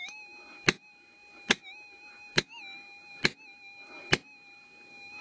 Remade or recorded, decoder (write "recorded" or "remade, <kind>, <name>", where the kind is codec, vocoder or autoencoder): recorded